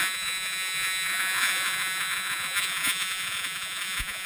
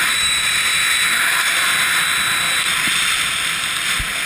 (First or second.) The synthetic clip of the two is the first